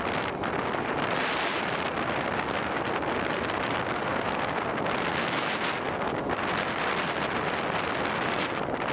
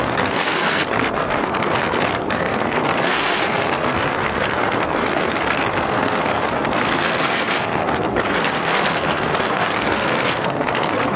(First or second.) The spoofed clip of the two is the second